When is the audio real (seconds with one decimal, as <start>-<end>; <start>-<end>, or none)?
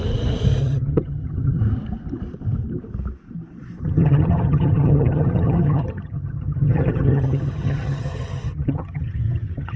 0.0-0.6; 1.6-3.8